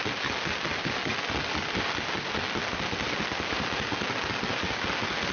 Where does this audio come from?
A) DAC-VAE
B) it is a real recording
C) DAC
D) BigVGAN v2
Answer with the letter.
B